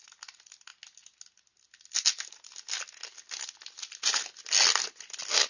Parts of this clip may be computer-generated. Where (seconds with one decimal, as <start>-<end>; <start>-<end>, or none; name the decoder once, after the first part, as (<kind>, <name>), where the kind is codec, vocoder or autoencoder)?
none